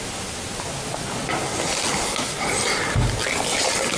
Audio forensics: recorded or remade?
recorded